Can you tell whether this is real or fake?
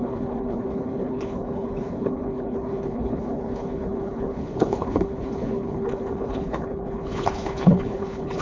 fake